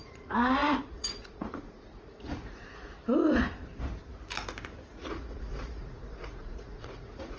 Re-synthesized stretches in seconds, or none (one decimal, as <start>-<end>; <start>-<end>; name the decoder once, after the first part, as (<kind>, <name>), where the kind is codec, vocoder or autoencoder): 0.0-3.0 (vocoder, Vocos); 4.9-7.4